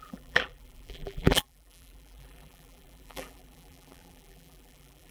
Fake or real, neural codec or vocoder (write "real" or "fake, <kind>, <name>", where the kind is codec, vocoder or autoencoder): fake, vocoder, BigVGAN v2